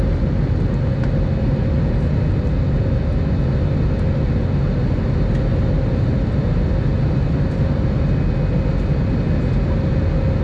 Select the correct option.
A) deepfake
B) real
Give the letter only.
B